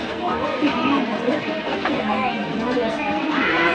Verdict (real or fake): fake